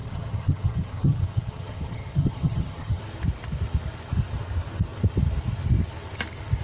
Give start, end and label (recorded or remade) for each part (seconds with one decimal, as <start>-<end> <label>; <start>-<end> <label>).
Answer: 0.0-3.0 remade; 3.0-6.6 recorded